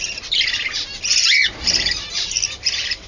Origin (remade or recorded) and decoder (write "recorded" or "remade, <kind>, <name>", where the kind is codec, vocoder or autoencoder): recorded